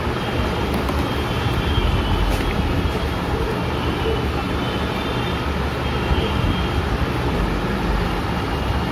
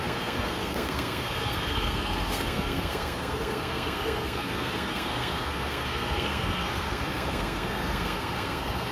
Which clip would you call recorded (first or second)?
first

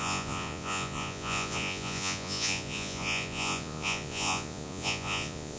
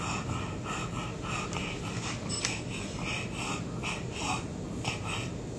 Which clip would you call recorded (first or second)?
second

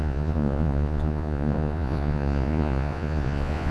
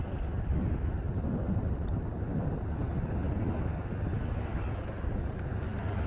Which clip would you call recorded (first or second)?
second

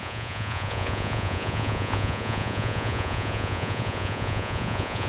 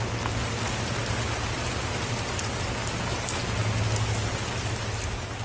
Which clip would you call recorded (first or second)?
second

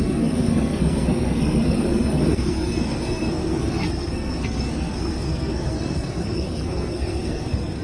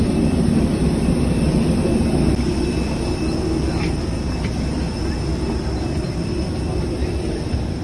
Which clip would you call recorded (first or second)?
second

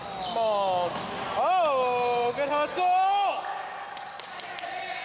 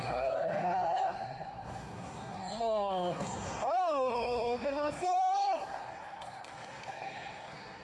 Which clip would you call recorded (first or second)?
first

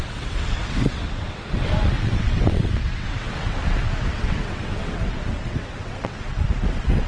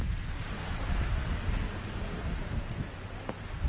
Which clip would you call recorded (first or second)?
second